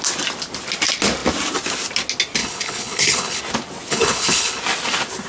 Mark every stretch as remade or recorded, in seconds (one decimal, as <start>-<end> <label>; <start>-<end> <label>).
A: 0.0-2.4 recorded; 2.4-3.4 remade; 3.4-3.9 recorded; 3.9-4.6 remade; 4.6-5.3 recorded